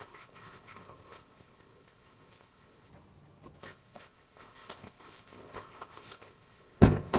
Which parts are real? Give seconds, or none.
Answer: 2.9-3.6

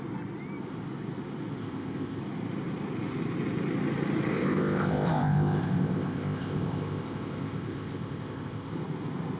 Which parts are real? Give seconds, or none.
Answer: 0.0-1.6; 2.2-4.3; 8.7-9.4

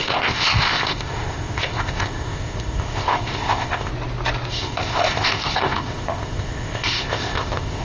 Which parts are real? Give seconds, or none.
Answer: 3.9-4.5

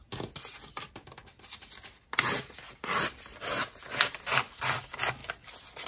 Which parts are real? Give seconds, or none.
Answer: 0.0-5.9